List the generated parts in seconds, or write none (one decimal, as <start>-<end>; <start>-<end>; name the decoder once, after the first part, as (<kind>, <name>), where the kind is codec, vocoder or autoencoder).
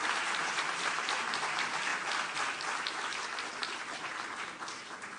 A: 0.4-1.2 (vocoder, BigVGAN v2)